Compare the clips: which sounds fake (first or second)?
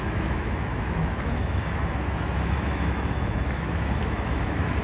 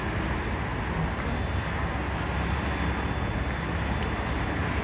first